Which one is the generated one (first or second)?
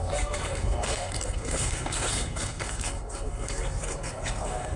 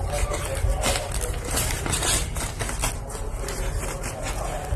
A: first